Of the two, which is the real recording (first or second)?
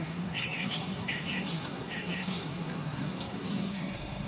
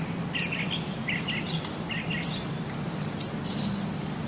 second